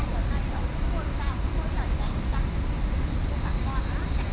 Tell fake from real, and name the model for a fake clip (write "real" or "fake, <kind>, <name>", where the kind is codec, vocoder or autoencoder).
real